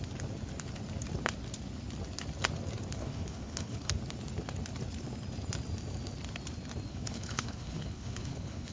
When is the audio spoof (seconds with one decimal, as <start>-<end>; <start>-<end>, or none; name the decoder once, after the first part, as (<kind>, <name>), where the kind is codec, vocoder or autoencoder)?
3.0-3.9 (codec, HILCodec); 6.9-8.7